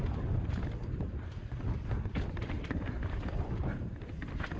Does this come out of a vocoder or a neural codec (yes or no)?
yes